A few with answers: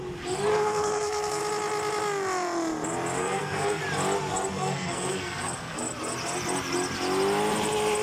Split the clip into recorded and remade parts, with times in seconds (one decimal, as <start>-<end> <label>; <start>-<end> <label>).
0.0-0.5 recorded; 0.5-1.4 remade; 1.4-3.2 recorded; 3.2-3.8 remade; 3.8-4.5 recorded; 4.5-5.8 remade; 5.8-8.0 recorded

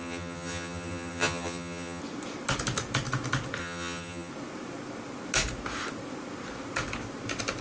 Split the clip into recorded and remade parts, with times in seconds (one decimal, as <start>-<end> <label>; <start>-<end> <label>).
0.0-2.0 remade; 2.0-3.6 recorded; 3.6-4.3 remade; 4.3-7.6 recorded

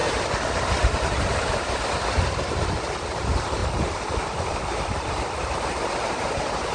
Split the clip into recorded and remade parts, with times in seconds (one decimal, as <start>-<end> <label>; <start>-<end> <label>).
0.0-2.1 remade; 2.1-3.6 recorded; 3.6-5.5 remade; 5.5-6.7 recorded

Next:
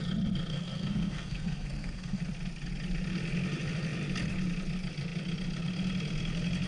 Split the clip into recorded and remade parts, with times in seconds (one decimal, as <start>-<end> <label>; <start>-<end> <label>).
0.0-0.5 recorded; 0.5-2.2 remade; 2.2-6.7 recorded

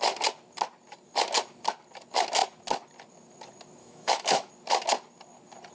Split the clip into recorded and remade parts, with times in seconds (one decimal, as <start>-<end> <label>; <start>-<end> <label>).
0.0-3.8 recorded; 3.8-4.5 remade; 4.5-5.7 recorded

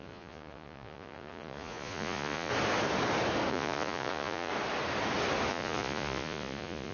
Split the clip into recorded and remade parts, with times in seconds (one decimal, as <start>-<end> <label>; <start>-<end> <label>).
0.0-2.5 remade; 2.5-3.5 recorded; 3.5-4.5 remade; 4.5-5.5 recorded; 5.5-6.9 remade

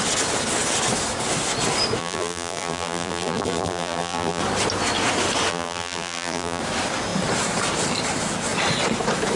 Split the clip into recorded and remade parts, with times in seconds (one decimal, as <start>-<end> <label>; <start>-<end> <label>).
0.0-2.0 recorded; 2.0-4.4 remade; 4.4-5.5 recorded; 5.5-6.6 remade; 6.6-9.4 recorded

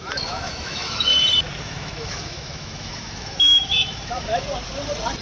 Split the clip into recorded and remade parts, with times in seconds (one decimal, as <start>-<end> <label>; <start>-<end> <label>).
0.0-1.1 remade; 1.1-1.6 recorded; 1.6-4.3 remade; 4.3-5.2 recorded